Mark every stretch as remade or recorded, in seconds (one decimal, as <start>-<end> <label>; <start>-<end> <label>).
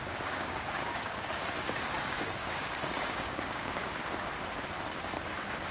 0.0-3.8 remade; 3.8-5.7 recorded